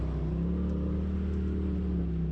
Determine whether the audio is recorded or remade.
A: recorded